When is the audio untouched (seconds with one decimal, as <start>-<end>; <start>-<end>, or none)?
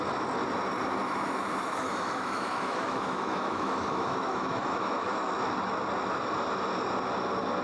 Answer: 0.0-1.0; 5.3-7.6